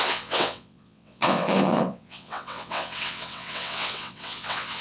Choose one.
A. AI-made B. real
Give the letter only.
A